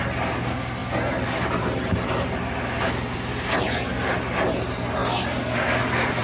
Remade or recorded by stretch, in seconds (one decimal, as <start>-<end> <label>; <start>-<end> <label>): 0.0-6.2 recorded